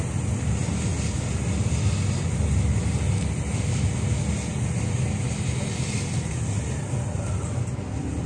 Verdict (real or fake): real